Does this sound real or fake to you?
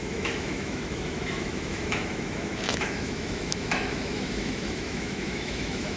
fake